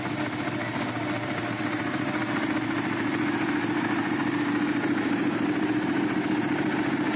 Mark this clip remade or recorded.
recorded